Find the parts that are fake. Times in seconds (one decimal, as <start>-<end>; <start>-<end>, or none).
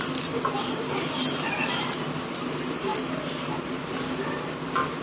none